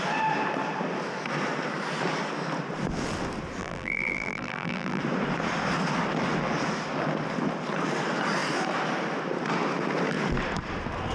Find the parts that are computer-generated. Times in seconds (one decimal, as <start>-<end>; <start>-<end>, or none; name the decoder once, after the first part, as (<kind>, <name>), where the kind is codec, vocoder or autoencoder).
3.6-5.0 (vocoder, BigVGAN v2)